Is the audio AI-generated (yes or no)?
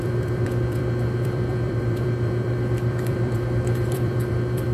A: yes